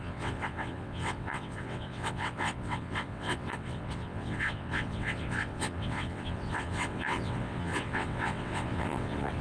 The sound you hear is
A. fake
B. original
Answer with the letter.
A